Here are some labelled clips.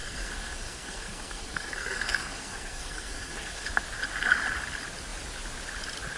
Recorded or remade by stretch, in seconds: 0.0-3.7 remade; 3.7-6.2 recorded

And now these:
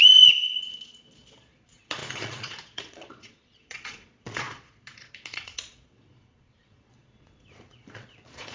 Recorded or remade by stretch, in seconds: 0.0-8.5 remade

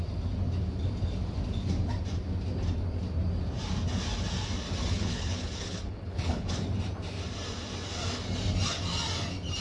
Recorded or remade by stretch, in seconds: 0.0-4.8 recorded; 4.8-6.5 remade; 6.5-9.6 recorded

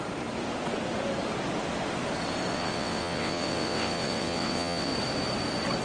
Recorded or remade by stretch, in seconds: 0.0-2.5 recorded; 2.5-4.9 remade; 4.9-5.8 recorded

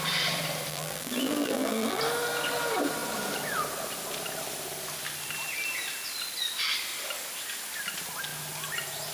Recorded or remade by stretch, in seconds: 0.0-0.7 recorded; 0.7-2.0 remade; 2.0-9.1 recorded

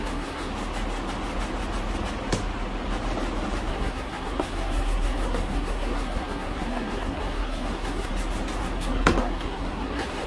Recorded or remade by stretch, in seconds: 0.0-0.5 remade; 0.5-3.7 recorded; 3.7-8.1 remade; 8.1-8.6 recorded; 8.6-10.3 remade

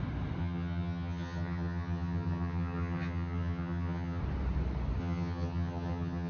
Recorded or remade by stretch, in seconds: 0.0-0.4 recorded; 0.4-4.2 remade; 4.2-5.0 recorded; 5.0-6.3 remade